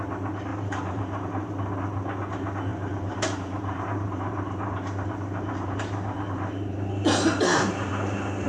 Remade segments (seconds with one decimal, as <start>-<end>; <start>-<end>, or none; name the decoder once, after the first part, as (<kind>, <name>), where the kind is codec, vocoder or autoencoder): 0.5-1.5 (vocoder, BigVGAN v2); 2.7-6.9